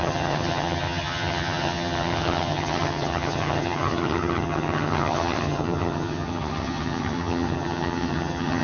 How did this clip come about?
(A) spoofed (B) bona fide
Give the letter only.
A